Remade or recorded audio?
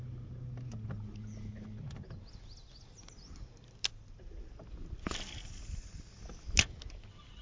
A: recorded